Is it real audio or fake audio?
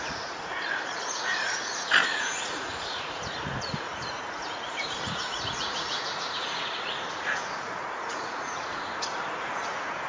fake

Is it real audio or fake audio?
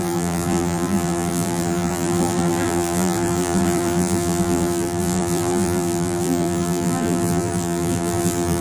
fake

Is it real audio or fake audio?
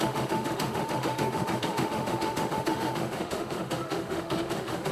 fake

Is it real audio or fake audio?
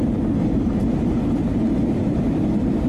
fake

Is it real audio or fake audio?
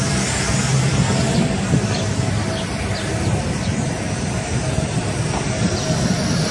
real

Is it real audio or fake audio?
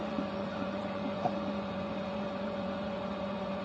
fake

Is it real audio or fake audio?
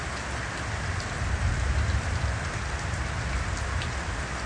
real